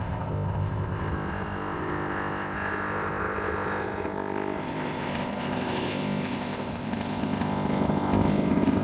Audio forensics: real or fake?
fake